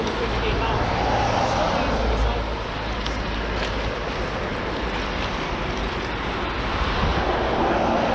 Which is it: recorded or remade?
recorded